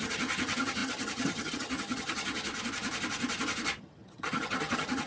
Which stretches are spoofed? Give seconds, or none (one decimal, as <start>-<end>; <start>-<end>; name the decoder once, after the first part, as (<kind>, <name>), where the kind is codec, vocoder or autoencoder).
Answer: 0.0-2.5 (vocoder, HiFi-GAN); 3.8-5.1